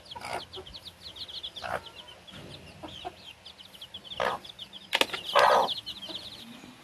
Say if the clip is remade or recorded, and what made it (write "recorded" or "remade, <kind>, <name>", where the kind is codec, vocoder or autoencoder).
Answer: recorded